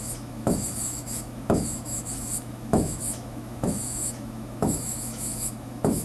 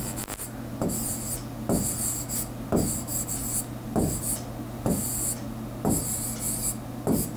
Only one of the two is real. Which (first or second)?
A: second